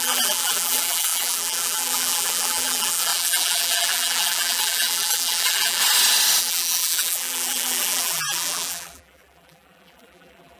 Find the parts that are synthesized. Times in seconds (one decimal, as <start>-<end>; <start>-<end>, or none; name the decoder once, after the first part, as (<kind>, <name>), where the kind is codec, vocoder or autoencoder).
0.0-5.8 (vocoder, BigVGAN v2); 6.4-10.6